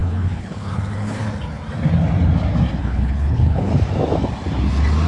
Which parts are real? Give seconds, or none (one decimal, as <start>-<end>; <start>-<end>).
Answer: 1.2-2.8; 3.7-5.1